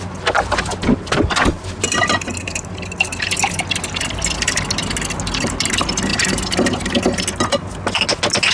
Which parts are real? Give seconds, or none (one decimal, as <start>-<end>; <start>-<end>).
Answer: 0.0-8.5